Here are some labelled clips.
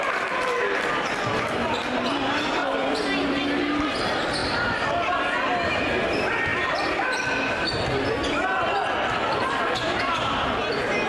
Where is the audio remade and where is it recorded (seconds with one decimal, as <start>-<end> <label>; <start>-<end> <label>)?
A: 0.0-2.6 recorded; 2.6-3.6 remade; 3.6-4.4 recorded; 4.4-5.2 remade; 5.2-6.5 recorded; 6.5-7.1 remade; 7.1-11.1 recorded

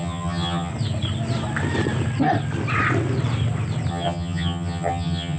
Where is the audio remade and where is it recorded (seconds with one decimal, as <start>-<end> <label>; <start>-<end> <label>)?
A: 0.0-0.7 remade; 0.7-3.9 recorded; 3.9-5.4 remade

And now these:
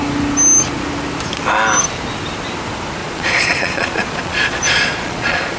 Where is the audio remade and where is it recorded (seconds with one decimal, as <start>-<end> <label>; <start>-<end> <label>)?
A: 0.0-3.0 recorded; 3.0-5.6 remade